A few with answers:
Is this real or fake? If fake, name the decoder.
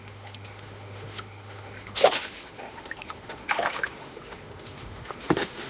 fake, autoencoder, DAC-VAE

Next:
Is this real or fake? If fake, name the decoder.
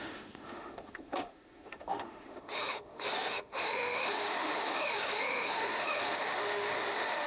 fake, autoencoder, DAC-VAE